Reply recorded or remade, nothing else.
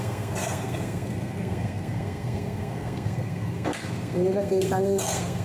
remade